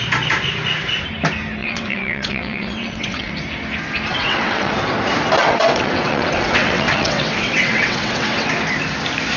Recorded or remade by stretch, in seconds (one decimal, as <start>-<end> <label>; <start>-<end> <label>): 0.0-1.6 recorded; 1.6-3.3 remade; 3.3-4.1 recorded; 4.1-4.7 remade; 4.7-5.4 recorded; 5.4-8.5 remade; 8.5-9.4 recorded